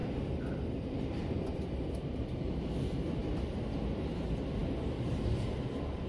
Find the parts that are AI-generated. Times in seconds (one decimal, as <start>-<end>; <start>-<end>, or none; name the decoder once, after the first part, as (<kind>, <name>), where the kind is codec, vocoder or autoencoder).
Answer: 3.2-4.1 (vocoder, BigVGAN v2)